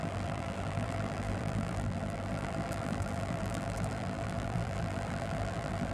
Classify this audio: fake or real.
fake